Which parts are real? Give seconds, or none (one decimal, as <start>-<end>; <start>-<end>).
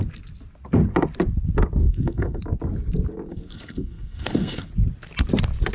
0.0-1.8; 2.4-3.3; 4.7-5.7